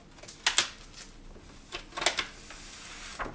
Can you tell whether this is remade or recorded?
recorded